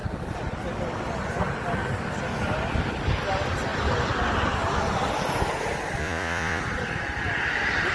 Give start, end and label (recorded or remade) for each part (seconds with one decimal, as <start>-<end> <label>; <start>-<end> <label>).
0.0-6.0 recorded; 6.0-6.6 remade; 6.6-7.9 recorded